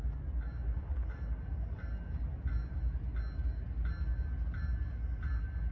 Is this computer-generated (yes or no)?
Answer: no